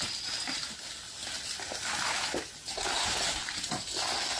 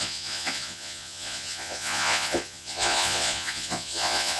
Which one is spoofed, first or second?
second